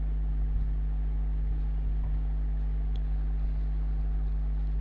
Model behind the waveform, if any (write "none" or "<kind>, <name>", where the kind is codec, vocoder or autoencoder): none